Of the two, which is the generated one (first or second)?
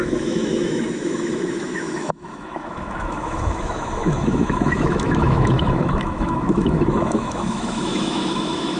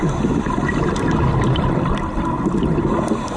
first